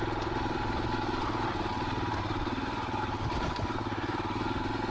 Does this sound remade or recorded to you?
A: recorded